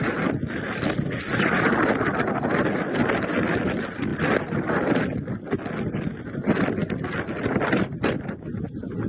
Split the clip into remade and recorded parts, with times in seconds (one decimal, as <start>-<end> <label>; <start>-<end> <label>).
0.0-9.1 recorded